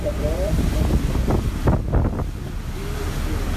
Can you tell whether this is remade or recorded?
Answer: recorded